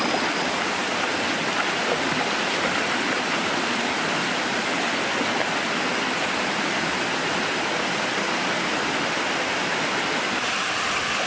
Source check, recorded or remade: recorded